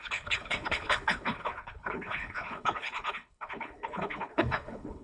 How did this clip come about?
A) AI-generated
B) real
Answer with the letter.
A